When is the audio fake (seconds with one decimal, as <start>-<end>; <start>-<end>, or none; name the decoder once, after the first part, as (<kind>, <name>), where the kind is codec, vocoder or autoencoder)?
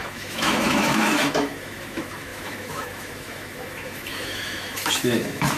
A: 0.0-5.6 (autoencoder, DAC-VAE)